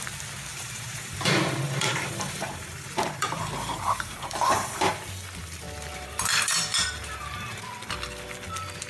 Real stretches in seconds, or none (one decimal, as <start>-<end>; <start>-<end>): 0.0-0.5; 4.9-5.9; 7.6-8.9